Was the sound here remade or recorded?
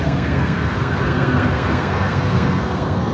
remade